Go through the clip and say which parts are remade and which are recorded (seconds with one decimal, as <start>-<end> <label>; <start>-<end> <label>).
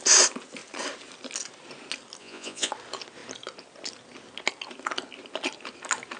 0.0-2.2 recorded; 2.2-2.7 remade; 2.7-6.2 recorded